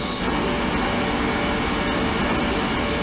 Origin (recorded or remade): recorded